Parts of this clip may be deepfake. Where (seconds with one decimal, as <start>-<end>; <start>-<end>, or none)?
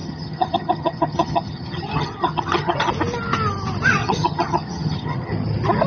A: 0.0-2.9; 4.0-5.3